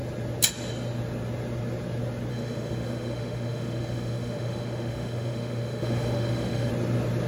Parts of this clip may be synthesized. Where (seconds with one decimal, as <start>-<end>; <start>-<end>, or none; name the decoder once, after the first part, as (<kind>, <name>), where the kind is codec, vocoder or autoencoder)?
2.3-6.7 (autoencoder, DAC-VAE)